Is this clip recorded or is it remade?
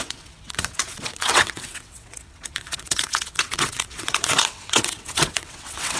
remade